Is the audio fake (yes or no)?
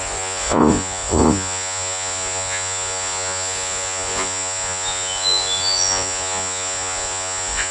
yes